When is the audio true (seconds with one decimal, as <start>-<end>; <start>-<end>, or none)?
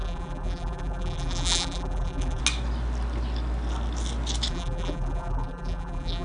2.4-4.5